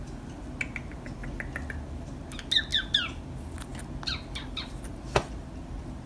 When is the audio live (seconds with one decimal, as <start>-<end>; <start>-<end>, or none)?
0.0-6.1